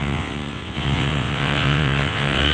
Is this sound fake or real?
fake